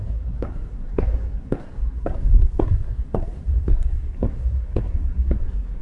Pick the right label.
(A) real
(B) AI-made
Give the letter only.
B